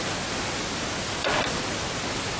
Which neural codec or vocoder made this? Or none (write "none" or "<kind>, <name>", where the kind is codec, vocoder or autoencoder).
none